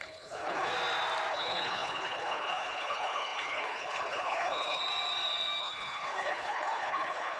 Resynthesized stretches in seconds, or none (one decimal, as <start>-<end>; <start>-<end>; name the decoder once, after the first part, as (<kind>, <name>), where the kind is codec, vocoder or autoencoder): 0.0-0.7 (codec, HILCodec); 1.3-4.8; 5.6-7.4